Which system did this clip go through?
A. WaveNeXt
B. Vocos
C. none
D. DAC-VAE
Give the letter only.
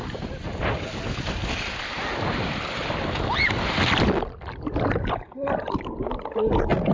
C